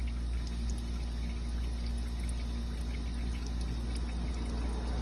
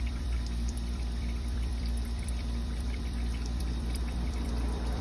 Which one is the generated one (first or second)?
second